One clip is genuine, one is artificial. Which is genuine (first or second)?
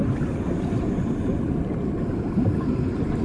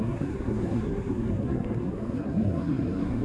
first